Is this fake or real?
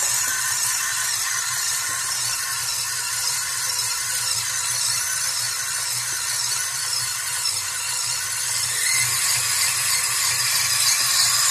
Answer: real